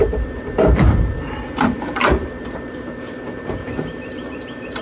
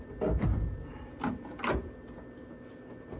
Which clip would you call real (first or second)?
second